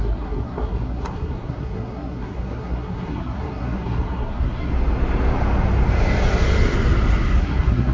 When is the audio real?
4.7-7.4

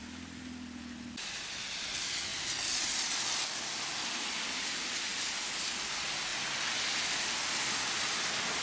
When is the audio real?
0.0-8.6

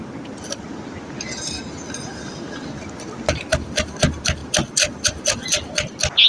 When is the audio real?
0.0-6.3

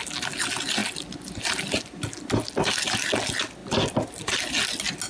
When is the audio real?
0.0-5.1

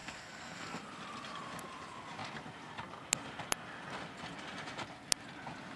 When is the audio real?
0.8-5.8